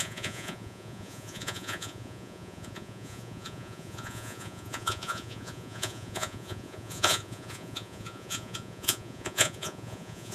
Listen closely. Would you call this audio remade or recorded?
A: remade